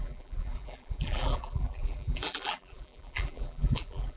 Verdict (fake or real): fake